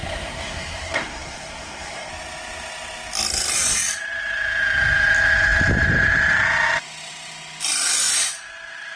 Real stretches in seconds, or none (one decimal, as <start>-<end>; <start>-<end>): 2.1-9.0